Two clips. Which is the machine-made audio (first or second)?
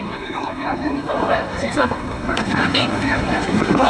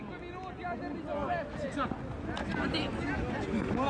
first